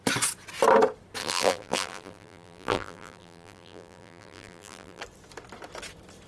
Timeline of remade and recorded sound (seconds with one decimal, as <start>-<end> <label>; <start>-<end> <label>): 0.0-1.2 recorded; 1.2-5.0 remade; 5.0-6.3 recorded